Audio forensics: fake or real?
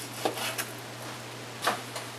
real